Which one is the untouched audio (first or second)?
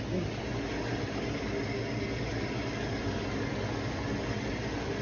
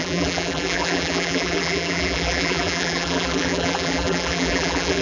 first